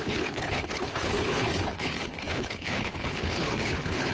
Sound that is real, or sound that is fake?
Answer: fake